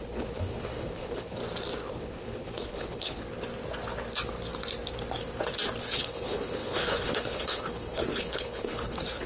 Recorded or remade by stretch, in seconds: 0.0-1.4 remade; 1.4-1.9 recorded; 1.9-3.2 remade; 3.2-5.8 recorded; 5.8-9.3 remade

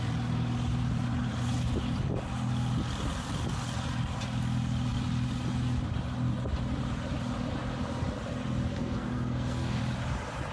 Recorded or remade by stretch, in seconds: 0.0-8.7 recorded; 8.7-9.8 remade; 9.8-10.5 recorded

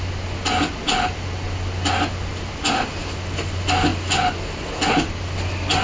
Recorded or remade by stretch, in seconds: 0.0-5.8 recorded

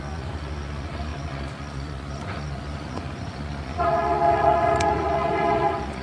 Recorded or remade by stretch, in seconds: 0.0-6.0 remade

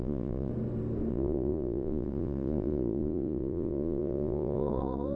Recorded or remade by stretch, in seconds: 0.0-0.5 remade; 0.5-1.1 recorded; 1.1-5.2 remade